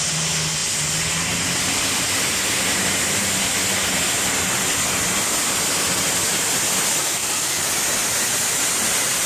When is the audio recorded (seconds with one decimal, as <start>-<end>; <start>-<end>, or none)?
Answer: 0.0-7.0; 7.6-9.3